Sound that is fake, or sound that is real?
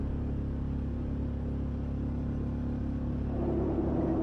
real